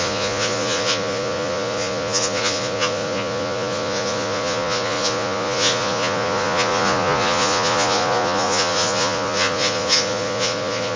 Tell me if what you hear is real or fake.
fake